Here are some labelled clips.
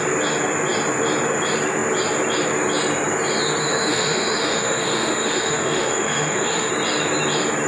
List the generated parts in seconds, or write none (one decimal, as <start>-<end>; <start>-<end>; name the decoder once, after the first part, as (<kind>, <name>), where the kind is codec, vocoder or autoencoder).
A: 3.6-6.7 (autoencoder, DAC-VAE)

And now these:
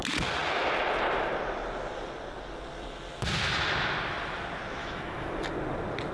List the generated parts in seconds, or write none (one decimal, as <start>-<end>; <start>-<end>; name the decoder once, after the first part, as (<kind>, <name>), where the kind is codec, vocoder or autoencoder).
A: 4.8-5.3 (autoencoder, DAC-VAE)

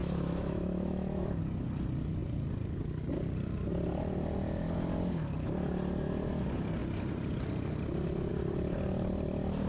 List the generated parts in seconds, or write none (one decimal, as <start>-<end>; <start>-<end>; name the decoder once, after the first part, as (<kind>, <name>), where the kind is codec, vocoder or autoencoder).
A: 0.0-1.4 (autoencoder, DAC-VAE)

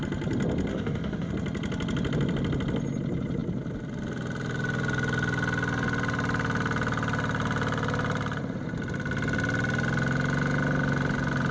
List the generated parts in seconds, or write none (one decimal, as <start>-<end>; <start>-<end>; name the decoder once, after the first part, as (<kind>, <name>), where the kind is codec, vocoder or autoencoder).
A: 0.7-1.3 (autoencoder, DAC-VAE)